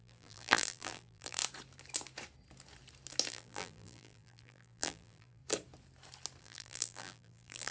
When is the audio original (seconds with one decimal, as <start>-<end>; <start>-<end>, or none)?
1.4-3.3; 5.4-6.4